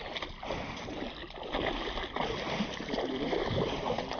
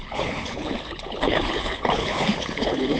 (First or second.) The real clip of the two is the first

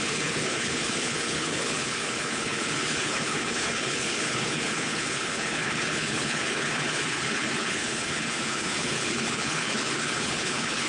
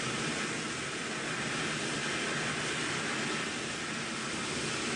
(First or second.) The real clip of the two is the second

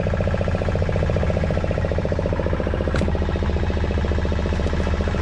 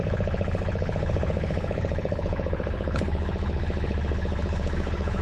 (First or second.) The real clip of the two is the first